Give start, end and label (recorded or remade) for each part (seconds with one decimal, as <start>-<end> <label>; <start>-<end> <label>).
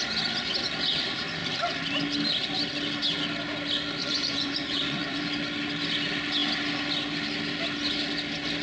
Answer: 0.0-4.0 recorded; 4.0-5.2 remade; 5.2-8.6 recorded